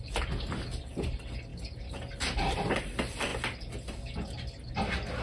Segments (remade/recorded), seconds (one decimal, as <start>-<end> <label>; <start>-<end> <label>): 0.0-5.2 recorded